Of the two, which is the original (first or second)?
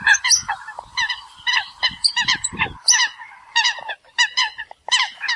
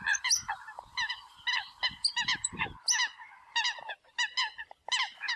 second